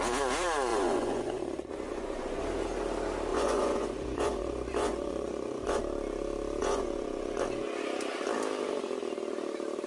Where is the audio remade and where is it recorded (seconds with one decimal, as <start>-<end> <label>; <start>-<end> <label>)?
0.0-0.7 recorded; 0.7-2.4 remade; 2.4-3.3 recorded; 3.3-5.8 remade; 5.8-6.6 recorded; 6.6-7.8 remade; 7.8-9.9 recorded